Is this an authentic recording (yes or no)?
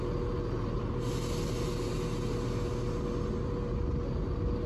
yes